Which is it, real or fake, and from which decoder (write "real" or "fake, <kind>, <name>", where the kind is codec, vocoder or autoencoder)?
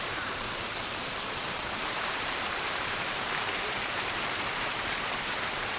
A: fake, vocoder, BigVGAN v2